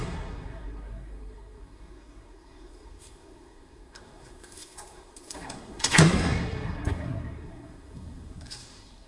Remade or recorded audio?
remade